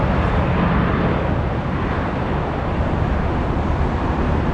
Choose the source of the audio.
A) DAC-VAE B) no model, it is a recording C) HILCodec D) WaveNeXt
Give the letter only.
B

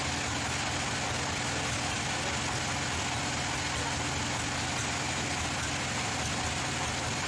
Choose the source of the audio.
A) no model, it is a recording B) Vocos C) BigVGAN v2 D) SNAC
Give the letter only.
A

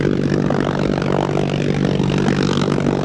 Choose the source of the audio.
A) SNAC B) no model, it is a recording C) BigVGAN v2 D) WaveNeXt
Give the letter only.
B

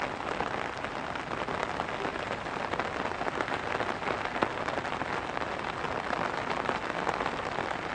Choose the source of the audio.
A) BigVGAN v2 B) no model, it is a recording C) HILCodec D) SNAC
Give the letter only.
B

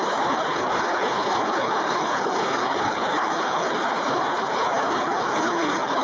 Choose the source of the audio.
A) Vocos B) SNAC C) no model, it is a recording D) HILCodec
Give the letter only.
D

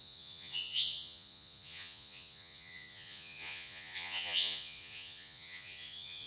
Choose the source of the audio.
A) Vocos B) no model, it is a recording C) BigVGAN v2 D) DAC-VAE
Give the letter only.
A